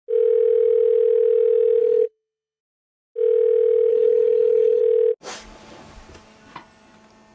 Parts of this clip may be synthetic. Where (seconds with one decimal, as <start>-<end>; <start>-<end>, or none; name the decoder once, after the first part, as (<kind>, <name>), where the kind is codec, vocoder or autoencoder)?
1.8-2.6 (codec, HILCodec); 3.9-4.8